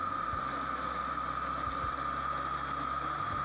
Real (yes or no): yes